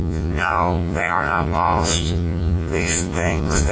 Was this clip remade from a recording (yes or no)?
yes